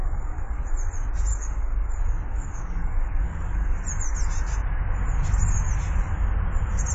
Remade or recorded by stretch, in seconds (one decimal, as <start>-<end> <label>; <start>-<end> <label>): 0.0-0.6 remade; 0.6-1.3 recorded; 1.3-1.9 remade; 1.9-2.3 recorded; 2.3-3.8 remade; 3.8-6.9 recorded